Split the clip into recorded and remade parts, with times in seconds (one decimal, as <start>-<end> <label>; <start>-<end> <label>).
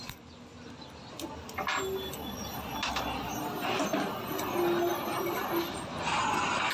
0.0-6.7 recorded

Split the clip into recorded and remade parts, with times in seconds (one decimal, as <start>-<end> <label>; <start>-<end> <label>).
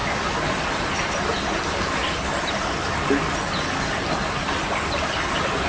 0.0-5.7 recorded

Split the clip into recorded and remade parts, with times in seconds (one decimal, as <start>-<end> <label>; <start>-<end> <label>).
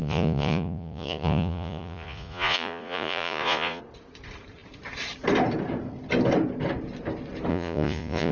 0.0-3.8 remade; 3.8-7.5 recorded; 7.5-8.3 remade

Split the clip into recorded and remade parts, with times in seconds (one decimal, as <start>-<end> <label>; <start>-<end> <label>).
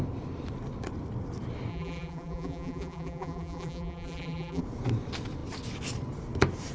0.0-1.7 recorded; 1.7-4.6 remade; 4.6-6.7 recorded